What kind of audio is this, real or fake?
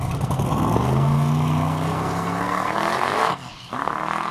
fake